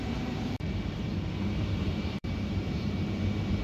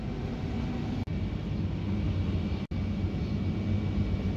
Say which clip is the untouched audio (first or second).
second